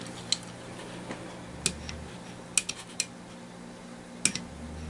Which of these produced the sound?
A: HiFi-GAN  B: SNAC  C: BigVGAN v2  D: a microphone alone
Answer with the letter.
D